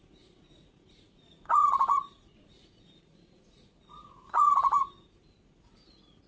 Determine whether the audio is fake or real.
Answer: fake